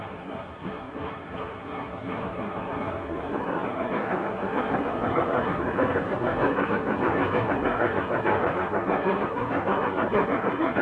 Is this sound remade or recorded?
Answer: remade